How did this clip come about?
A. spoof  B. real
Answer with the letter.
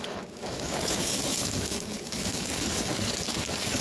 A